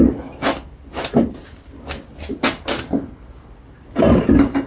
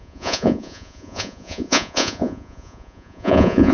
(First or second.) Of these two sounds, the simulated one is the second